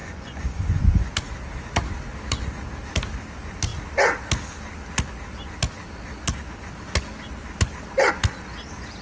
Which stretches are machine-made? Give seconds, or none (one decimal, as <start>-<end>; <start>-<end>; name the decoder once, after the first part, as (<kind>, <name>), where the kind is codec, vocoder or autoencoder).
0.0-1.1 (vocoder, Vocos)